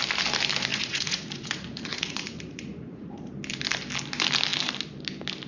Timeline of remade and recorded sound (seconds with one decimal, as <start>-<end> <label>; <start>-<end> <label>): 0.0-0.7 recorded; 0.7-3.3 remade; 3.3-5.5 recorded